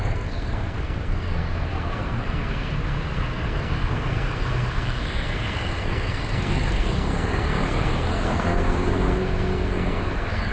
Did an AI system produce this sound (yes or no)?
yes